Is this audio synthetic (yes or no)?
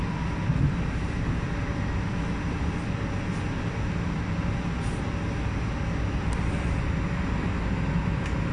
no